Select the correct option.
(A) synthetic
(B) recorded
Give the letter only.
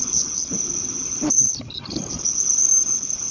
B